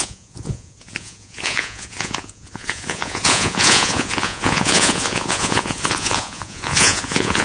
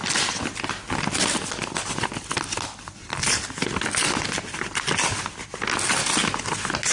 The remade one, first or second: first